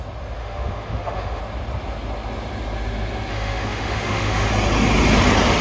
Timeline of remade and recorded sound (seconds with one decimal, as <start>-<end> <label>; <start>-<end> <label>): 0.0-0.4 recorded; 0.4-1.4 remade; 1.4-3.3 recorded; 3.3-4.5 remade; 4.5-5.6 recorded